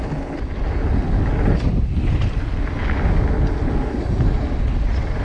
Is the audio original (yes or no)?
yes